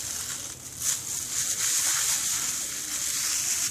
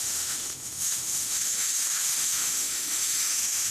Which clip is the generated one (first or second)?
second